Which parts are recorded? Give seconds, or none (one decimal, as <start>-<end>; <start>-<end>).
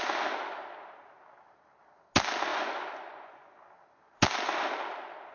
0.0-2.5; 3.6-5.3